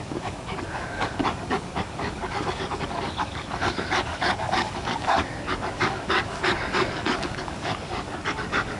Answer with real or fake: fake